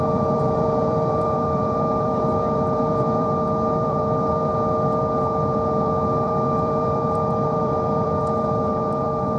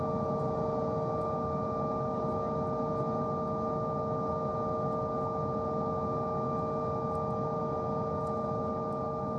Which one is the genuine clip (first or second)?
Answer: second